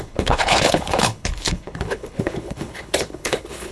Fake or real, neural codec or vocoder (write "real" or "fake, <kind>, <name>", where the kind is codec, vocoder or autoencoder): fake, codec, HILCodec